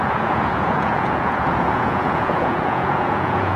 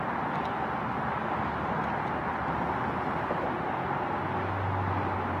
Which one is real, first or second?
second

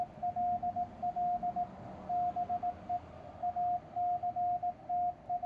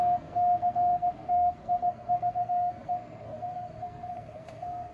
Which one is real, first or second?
first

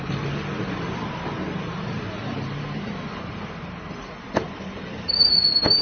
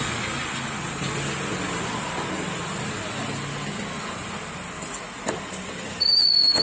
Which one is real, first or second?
second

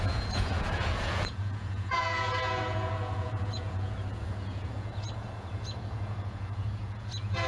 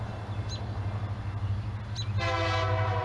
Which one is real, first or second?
second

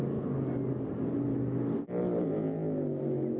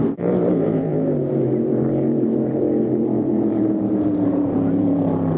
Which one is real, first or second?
first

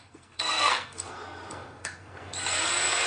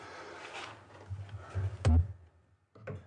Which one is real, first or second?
second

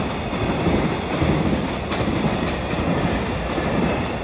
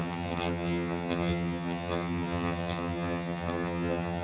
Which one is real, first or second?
first